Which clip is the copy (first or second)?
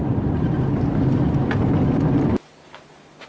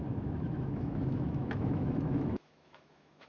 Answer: second